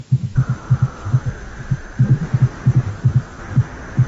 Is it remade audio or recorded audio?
recorded